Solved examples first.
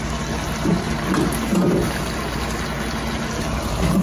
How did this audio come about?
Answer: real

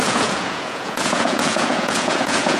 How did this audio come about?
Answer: fake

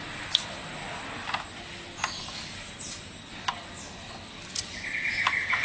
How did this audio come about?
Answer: real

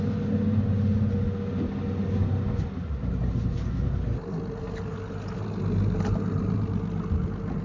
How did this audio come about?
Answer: real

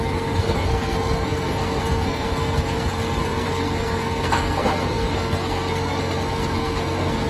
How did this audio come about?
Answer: fake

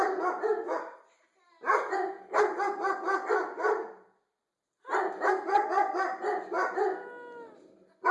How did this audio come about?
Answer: real